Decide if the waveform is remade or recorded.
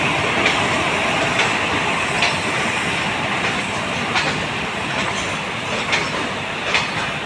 recorded